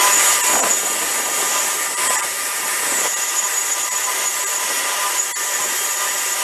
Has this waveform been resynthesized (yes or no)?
yes